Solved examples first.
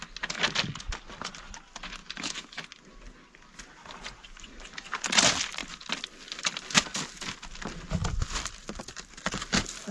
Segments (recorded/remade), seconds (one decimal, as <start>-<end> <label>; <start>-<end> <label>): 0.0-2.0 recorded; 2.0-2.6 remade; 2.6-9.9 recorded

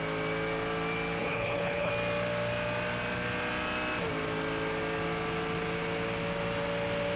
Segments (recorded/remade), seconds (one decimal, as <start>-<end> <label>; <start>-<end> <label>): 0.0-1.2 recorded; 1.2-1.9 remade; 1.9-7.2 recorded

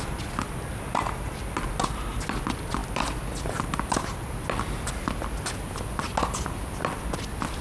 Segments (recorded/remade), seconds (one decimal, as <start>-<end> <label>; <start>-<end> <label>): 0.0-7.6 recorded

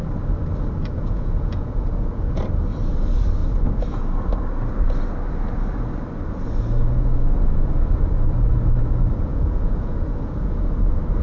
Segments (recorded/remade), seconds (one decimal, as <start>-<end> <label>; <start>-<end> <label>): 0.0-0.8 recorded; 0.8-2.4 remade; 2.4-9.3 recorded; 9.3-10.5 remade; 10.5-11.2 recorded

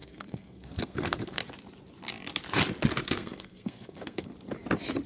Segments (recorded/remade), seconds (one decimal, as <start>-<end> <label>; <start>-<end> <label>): 0.0-1.4 remade; 1.4-3.0 recorded; 3.0-4.3 remade; 4.3-5.1 recorded